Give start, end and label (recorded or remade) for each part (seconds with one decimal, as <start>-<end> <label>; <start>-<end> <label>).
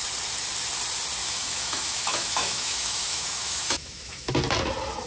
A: 0.0-1.2 recorded; 1.2-4.3 remade; 4.3-5.1 recorded